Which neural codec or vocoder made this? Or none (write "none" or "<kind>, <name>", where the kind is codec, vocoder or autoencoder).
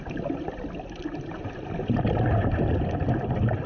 none